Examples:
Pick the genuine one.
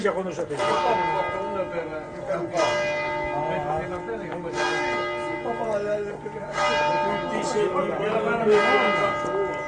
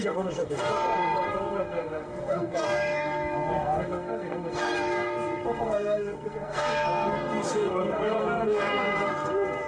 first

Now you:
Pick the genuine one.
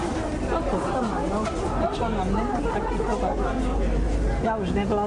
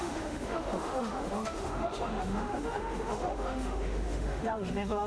first